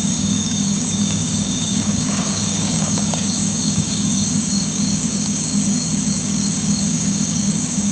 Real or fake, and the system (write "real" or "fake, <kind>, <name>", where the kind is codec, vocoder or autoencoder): fake, codec, DAC